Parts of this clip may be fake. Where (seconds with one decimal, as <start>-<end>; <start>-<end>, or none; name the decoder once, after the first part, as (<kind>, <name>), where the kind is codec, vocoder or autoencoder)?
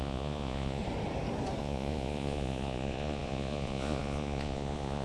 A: 0.0-0.8 (vocoder, Vocos); 1.6-5.0